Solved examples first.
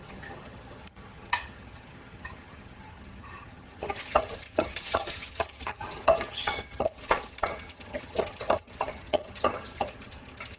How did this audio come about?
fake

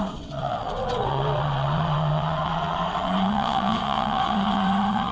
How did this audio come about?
fake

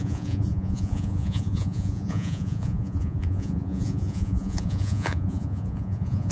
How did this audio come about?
fake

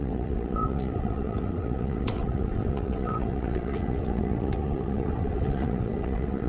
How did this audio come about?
fake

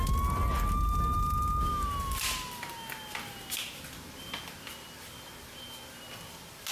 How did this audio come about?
real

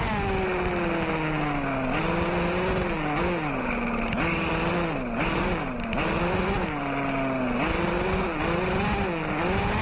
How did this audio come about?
real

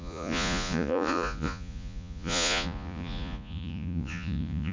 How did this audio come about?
fake